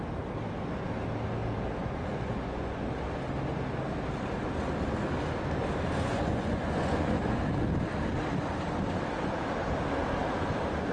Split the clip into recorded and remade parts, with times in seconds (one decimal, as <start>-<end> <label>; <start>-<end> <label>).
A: 0.0-1.8 recorded; 1.8-2.8 remade; 2.8-6.1 recorded; 6.1-7.4 remade; 7.4-10.9 recorded